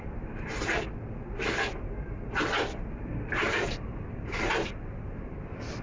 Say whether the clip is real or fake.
fake